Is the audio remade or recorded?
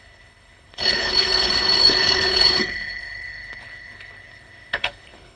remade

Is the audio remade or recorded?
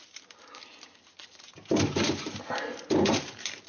remade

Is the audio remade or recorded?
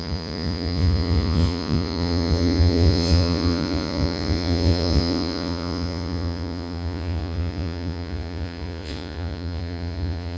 remade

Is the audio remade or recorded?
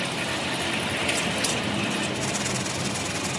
recorded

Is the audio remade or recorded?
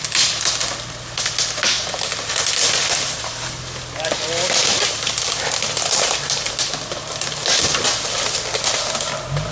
recorded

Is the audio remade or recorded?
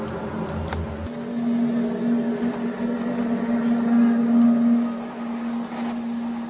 recorded